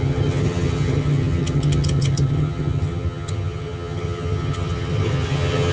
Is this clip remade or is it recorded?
remade